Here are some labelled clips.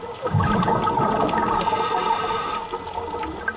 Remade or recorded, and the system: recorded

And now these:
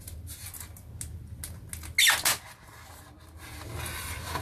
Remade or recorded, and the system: recorded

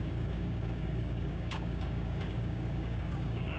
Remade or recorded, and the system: remade, codec, DAC